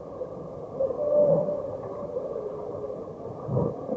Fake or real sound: real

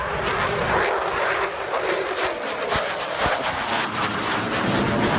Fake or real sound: real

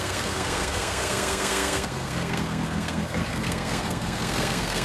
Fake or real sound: fake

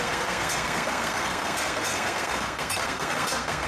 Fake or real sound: fake